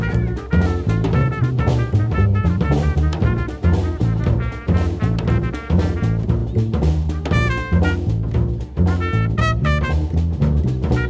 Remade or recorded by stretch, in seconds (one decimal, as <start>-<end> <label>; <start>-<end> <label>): 0.0-1.2 recorded; 1.2-6.0 remade; 6.0-11.1 recorded

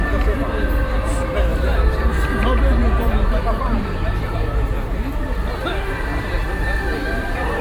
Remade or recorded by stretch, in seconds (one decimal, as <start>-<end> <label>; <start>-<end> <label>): 0.0-1.5 recorded; 1.5-2.2 remade; 2.2-2.8 recorded; 2.8-4.7 remade; 4.7-6.9 recorded; 6.9-7.6 remade

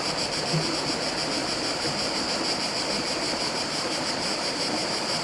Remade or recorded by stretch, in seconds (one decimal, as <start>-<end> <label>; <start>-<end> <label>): 0.0-1.4 recorded; 1.4-2.2 remade; 2.2-5.2 recorded

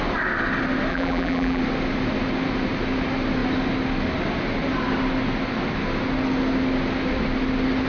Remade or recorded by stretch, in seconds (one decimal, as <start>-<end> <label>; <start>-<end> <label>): 0.0-0.9 recorded; 0.9-1.6 remade; 1.6-7.9 recorded

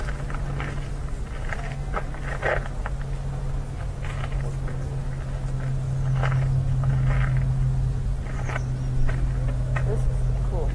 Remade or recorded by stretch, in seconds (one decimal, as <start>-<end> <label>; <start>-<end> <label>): 0.0-10.7 recorded

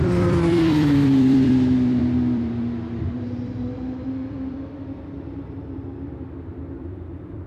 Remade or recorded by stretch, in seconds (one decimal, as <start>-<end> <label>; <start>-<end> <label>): 0.0-7.5 remade

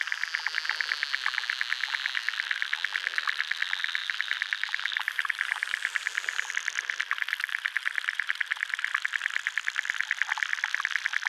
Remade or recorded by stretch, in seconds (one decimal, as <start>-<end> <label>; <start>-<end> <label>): 0.0-4.0 recorded; 4.0-6.5 remade; 6.5-11.3 recorded

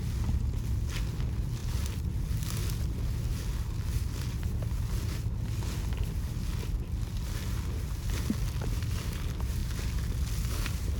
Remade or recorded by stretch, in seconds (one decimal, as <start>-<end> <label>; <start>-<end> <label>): 0.0-11.0 recorded